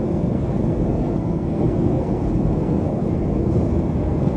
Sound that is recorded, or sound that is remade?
remade